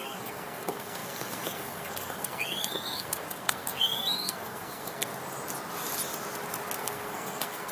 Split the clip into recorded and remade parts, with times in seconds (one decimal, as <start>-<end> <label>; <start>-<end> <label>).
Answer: 0.0-5.1 remade; 5.1-6.8 recorded; 6.8-7.7 remade